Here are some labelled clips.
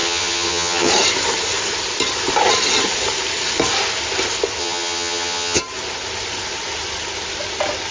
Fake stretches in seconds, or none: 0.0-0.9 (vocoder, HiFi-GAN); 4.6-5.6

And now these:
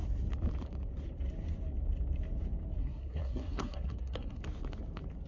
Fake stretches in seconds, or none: 2.8-4.4 (codec, SNAC)

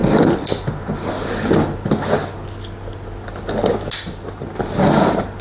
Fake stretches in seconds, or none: none

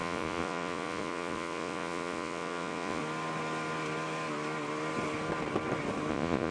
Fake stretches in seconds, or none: 0.0-3.0 (vocoder, Vocos); 6.1-6.5

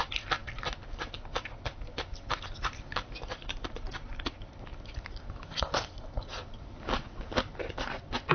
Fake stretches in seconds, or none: none

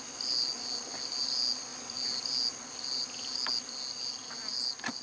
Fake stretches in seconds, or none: none

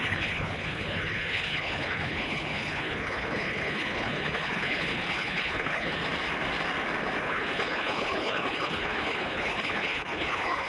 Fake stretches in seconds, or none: 0.0-6.0 (codec, HILCodec); 7.2-10.7

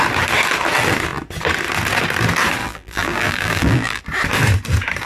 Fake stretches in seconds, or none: 2.6-4.0 (vocoder, BigVGAN v2)